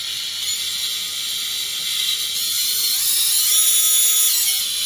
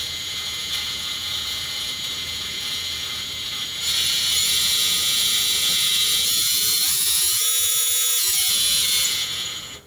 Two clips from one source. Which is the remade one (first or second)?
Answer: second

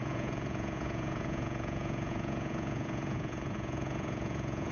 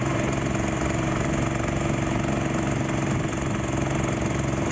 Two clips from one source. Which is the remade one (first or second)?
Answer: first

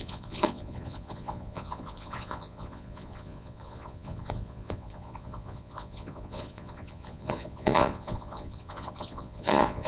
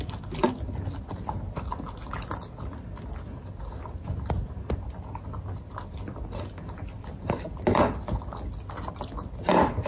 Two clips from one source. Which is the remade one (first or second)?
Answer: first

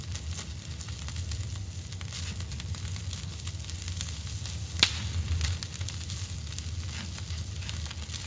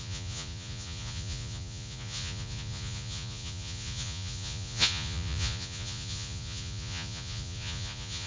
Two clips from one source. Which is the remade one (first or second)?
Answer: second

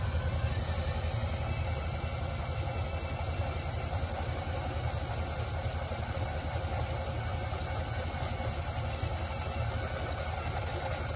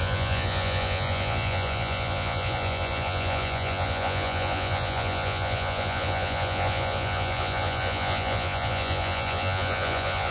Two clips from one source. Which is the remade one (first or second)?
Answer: second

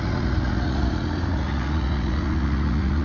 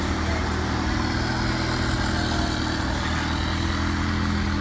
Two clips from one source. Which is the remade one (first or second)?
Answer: first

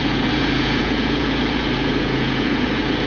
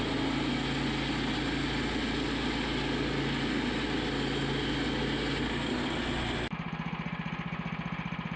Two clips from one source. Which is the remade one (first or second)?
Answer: first